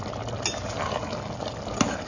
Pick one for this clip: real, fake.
real